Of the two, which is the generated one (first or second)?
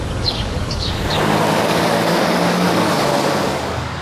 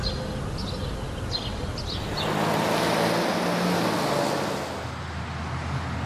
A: first